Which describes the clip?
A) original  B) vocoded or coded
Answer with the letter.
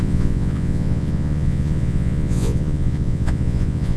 B